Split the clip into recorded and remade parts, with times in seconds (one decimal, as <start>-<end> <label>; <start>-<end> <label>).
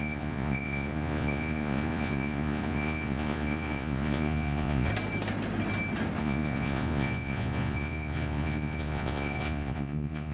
0.0-4.9 remade; 4.9-6.2 recorded; 6.2-10.3 remade